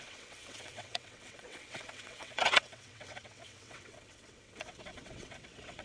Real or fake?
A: fake